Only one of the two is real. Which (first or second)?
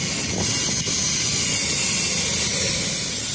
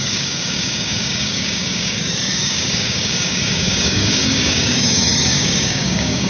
first